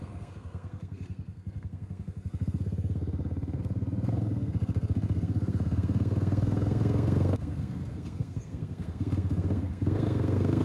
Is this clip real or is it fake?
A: fake